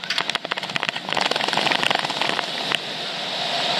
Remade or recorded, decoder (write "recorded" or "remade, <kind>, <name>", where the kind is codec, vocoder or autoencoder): recorded